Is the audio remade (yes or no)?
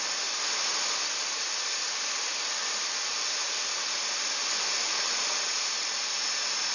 no